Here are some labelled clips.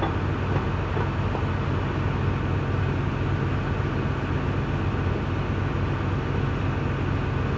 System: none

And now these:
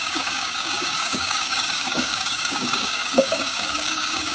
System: codec, DAC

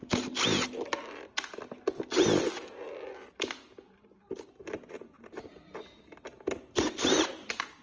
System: none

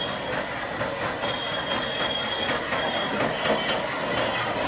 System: none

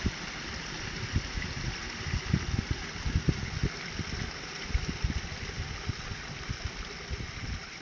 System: none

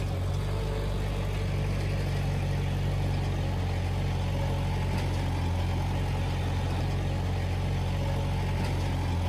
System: none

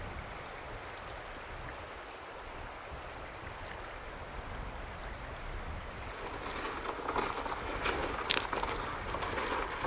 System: none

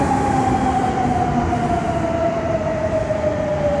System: none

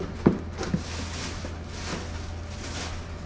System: none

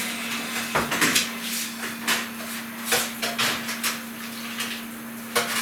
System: none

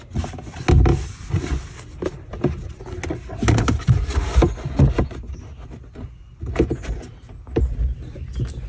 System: none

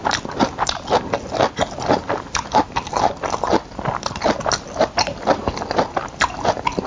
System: none